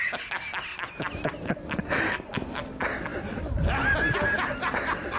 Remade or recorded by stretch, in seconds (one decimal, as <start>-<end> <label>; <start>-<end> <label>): 0.0-5.2 recorded